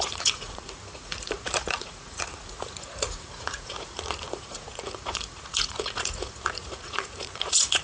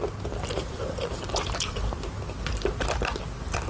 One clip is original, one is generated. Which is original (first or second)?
second